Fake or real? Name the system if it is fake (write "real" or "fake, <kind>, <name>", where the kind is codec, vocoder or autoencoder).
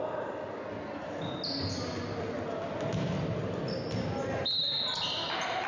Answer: real